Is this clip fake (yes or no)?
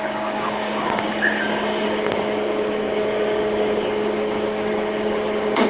yes